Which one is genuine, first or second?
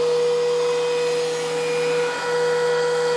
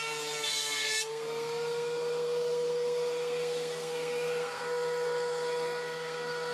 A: first